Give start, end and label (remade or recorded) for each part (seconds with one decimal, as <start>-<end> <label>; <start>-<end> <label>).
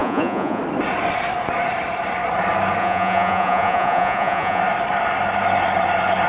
0.0-0.6 remade; 0.6-2.8 recorded; 2.8-4.6 remade; 4.6-6.3 recorded